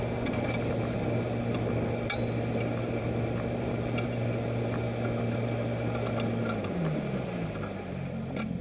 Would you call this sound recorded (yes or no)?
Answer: yes